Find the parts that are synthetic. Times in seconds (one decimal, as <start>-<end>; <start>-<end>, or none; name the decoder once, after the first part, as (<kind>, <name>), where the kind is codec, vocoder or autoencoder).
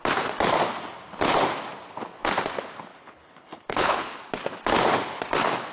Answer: 2.9-4.2 (codec, HILCodec)